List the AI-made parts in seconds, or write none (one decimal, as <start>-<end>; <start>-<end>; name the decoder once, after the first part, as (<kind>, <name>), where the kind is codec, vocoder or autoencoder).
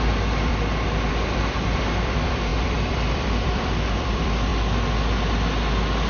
0.0-0.5 (vocoder, BigVGAN v2); 1.1-4.5